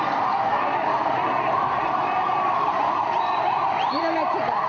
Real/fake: fake